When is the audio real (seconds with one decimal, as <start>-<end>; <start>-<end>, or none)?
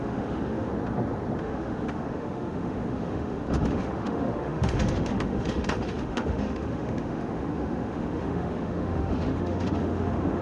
0.7-1.4